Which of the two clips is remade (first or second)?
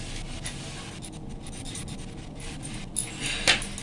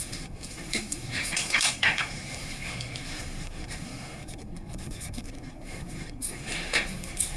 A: second